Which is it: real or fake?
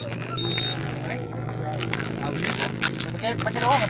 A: fake